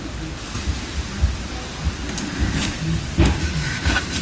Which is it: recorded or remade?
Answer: recorded